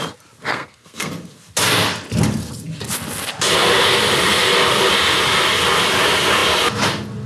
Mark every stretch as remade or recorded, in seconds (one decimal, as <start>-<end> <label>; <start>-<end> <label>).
0.0-0.5 recorded; 0.5-1.1 remade; 1.1-7.3 recorded